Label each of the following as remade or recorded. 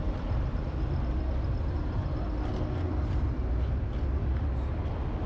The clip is recorded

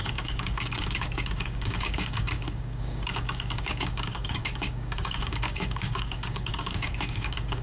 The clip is remade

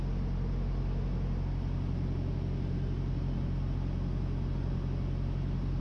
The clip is recorded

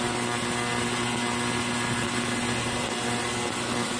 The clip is recorded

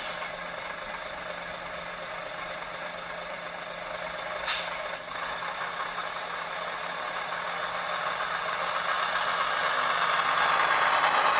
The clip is recorded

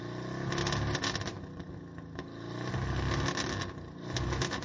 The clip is recorded